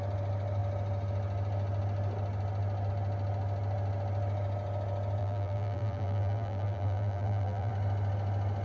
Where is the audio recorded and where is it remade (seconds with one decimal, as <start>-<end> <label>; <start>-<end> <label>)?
0.0-5.2 recorded; 5.2-7.7 remade; 7.7-8.6 recorded